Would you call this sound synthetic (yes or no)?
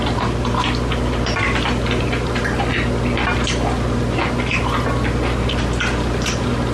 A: no